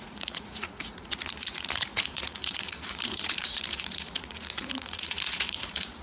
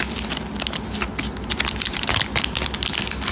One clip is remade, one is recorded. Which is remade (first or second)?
first